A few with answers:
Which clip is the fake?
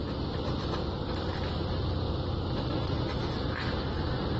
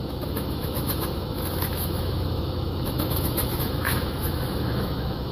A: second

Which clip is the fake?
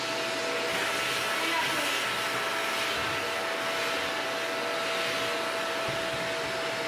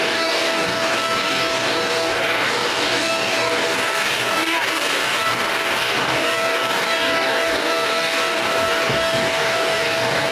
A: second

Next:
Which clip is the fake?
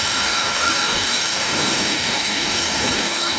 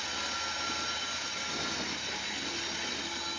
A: first